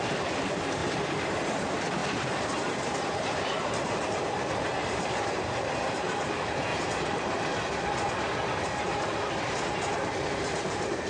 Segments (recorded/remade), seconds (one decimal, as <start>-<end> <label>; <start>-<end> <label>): 0.0-0.8 remade; 0.8-1.5 recorded; 1.5-6.7 remade; 6.7-10.1 recorded; 10.1-11.1 remade